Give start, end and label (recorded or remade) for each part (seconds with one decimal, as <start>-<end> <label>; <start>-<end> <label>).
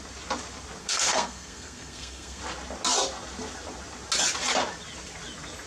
0.0-0.8 recorded; 0.8-2.4 remade; 2.4-5.7 recorded